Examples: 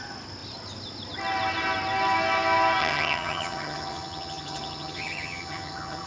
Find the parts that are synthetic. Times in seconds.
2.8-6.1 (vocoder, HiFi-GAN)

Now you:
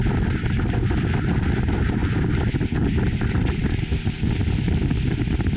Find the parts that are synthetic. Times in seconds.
none

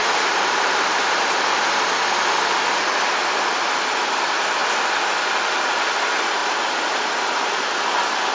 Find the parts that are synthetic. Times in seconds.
0.0-1.6 (vocoder, BigVGAN v2); 6.4-7.0

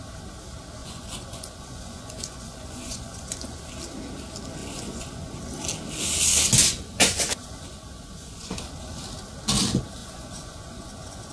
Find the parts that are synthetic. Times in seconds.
0.8-3.6 (vocoder, Vocos); 4.6-5.4; 6.6-9.0; 10.0-11.3

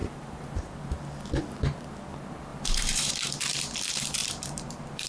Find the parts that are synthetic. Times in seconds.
0.0-1.0 (vocoder, BigVGAN v2); 2.5-3.1; 4.2-5.1